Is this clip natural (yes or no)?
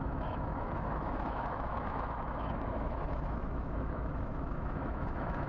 no